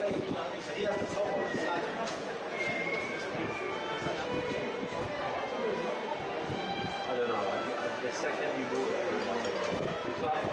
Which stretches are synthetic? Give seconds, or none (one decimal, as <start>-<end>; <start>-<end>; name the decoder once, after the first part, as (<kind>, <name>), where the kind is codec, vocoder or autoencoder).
1.4-2.6 (vocoder, Vocos)